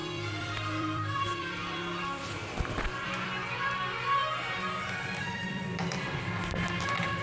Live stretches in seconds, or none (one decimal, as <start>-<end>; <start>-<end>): 4.2-5.2